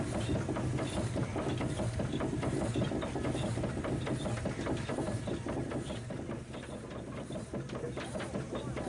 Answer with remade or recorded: recorded